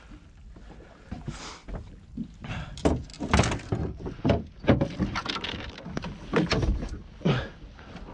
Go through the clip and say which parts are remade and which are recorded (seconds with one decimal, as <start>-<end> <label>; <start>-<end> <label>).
0.0-8.1 recorded